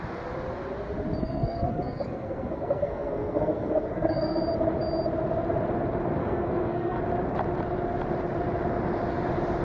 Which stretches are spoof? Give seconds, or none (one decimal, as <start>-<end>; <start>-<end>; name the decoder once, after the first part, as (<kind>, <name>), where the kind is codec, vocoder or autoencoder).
1.2-4.4 (codec, SNAC); 6.2-7.0